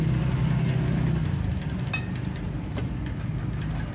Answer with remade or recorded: recorded